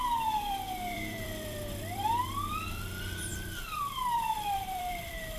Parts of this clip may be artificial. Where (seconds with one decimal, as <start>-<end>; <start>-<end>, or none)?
0.0-5.4